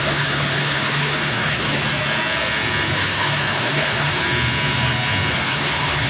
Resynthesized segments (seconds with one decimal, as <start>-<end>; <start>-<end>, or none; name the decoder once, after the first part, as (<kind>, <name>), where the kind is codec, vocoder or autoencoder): 0.0-1.8 (codec, HILCodec); 2.9-4.2; 5.3-6.1